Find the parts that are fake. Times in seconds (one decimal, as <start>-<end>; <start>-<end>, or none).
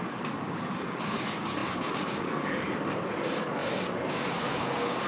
0.0-5.1